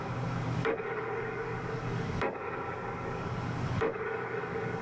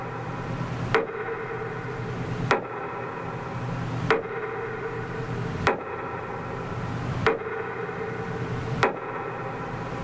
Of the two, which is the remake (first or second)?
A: first